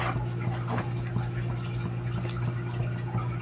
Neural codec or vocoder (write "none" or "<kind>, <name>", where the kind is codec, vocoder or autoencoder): none